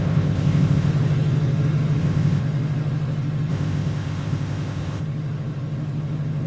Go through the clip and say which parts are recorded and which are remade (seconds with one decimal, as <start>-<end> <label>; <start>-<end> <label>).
0.0-0.9 remade; 0.9-2.0 recorded; 2.0-2.4 remade; 2.4-3.5 recorded; 3.5-5.0 remade; 5.0-6.5 recorded